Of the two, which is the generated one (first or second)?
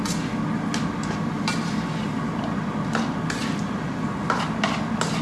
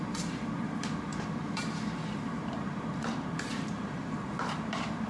second